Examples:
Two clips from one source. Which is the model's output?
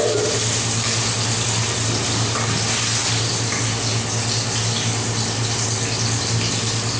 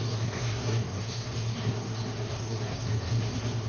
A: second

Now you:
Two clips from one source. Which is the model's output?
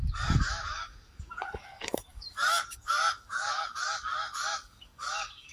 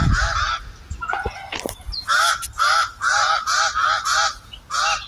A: first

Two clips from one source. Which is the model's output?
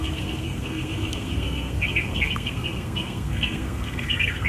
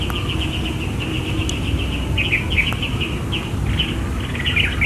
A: first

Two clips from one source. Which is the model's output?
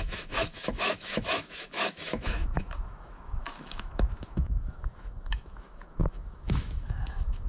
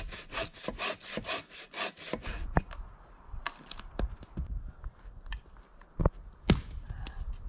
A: first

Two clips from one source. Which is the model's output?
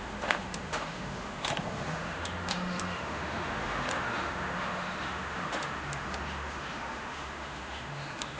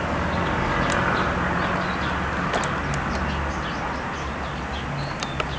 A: first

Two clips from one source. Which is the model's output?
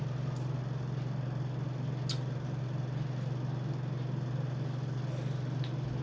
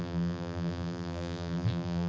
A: second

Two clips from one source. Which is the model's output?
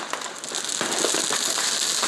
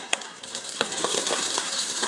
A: second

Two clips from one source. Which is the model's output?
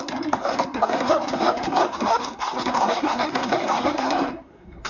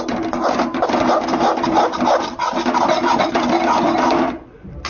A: first